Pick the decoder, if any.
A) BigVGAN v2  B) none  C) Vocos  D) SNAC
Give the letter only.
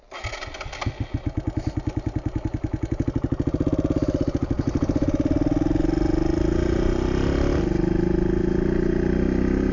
B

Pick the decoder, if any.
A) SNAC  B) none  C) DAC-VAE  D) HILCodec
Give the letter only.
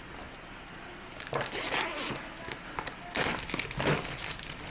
B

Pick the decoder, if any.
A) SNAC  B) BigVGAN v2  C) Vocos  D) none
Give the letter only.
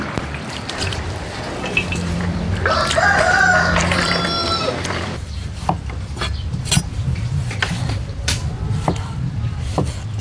B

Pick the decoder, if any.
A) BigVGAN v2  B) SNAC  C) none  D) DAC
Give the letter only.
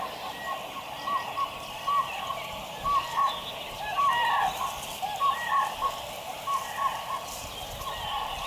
C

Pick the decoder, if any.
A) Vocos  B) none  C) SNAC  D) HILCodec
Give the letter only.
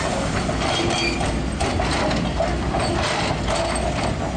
B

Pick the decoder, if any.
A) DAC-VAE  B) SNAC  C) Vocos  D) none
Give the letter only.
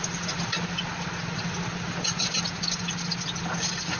D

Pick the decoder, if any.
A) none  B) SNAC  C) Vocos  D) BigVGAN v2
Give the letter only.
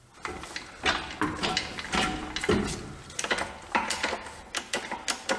A